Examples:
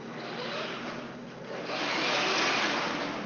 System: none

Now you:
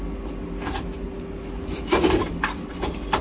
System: none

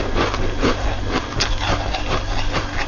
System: none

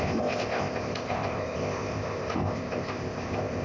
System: codec, ZipCodec